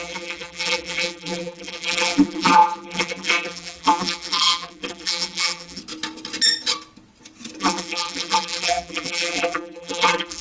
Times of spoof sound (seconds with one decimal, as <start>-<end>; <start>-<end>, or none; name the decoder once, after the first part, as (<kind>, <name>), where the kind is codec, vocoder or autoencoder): 0.0-5.8 (vocoder, BigVGAN v2); 7.6-10.4